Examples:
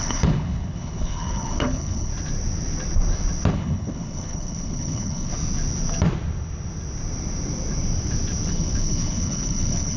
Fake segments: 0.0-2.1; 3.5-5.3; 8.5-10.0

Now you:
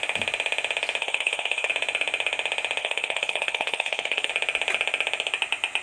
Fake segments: 1.0-1.7; 2.8-4.3

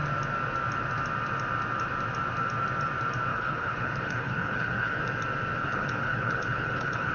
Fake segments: 3.3-5.0; 5.6-7.1

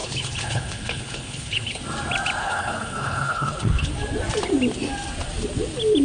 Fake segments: 0.0-1.8; 2.4-3.9

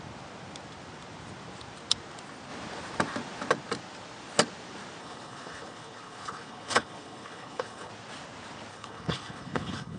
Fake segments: 5.0-7.9; 8.7-10.0

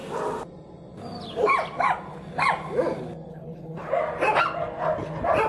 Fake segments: 3.3-3.9